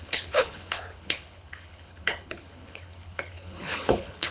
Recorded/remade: remade